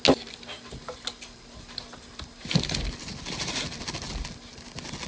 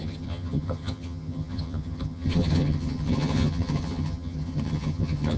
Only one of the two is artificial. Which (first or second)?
second